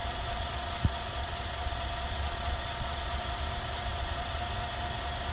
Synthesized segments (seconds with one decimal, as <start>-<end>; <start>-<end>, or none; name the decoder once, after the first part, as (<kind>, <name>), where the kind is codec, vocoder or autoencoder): 0.0-3.2 (vocoder, Vocos); 3.9-4.4